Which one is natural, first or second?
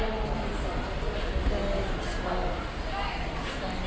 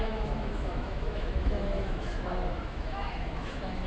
first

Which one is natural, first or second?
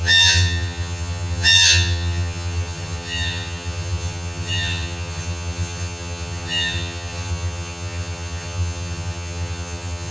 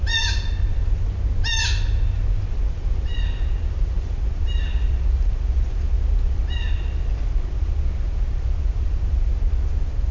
second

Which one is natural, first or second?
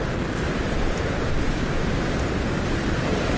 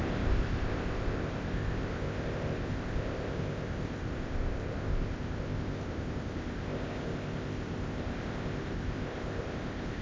first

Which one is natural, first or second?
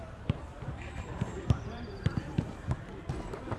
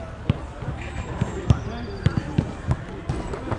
second